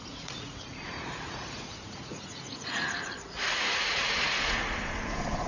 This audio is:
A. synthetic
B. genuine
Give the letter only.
A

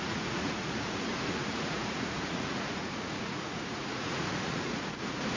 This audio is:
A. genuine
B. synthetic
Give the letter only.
B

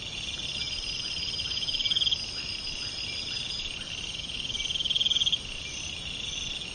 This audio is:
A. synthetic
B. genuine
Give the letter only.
B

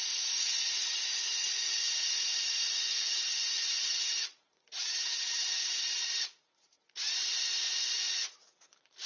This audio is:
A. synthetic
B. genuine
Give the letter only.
A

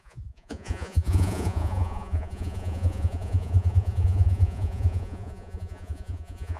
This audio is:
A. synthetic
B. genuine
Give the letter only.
A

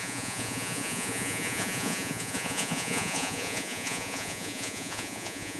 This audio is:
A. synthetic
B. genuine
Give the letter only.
A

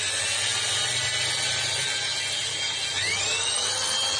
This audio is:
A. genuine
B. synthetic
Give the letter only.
A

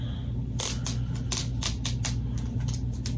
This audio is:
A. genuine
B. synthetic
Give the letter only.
A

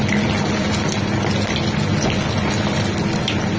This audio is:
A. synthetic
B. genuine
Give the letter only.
B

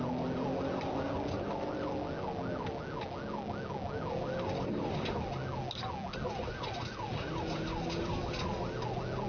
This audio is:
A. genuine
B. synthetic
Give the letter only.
A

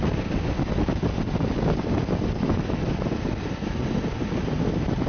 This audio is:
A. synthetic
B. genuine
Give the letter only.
B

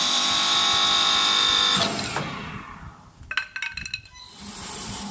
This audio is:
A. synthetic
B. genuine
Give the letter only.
B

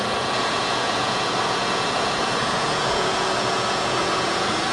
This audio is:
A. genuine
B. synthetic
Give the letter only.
B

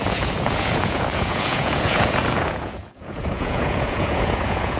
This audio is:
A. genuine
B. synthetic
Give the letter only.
B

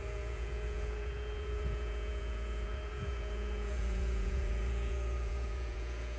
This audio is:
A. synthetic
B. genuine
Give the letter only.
A